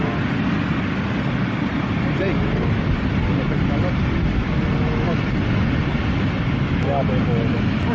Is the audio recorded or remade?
recorded